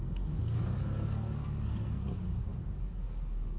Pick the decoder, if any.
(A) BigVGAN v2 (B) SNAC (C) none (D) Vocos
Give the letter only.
B